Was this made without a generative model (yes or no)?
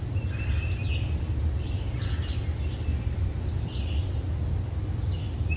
yes